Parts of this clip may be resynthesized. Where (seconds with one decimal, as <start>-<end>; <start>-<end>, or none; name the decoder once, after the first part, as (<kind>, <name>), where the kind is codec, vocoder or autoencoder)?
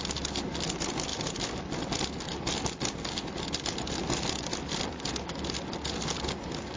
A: none